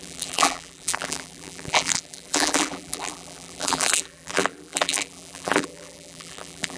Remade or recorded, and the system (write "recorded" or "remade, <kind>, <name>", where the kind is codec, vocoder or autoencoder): remade, vocoder, BigVGAN v2